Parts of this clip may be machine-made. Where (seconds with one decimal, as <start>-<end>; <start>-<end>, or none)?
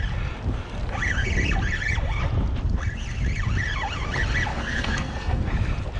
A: 4.5-5.5